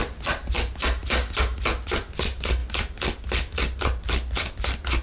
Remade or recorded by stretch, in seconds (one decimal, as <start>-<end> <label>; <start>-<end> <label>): 0.0-5.0 recorded